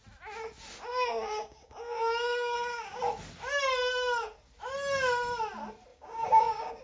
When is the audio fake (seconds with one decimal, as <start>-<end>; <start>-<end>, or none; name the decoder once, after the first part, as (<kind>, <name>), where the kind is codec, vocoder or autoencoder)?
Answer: 0.9-3.0 (codec, DAC); 5.9-6.8